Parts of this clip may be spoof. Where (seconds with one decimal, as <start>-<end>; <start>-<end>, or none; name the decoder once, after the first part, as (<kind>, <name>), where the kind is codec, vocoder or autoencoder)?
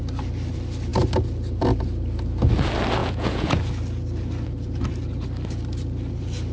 3.0-3.6 (vocoder, Vocos)